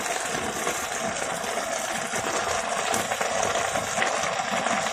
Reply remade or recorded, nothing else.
recorded